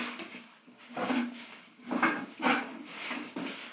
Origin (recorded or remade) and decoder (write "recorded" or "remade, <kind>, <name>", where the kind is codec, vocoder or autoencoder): remade, codec, DAC